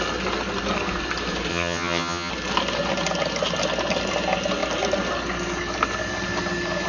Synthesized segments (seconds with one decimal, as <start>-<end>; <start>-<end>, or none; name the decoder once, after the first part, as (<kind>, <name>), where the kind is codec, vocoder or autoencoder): 1.5-2.3 (vocoder, HiFi-GAN)